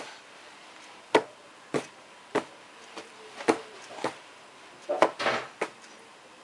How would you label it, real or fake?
real